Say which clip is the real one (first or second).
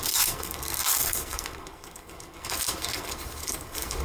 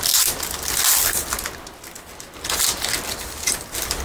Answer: second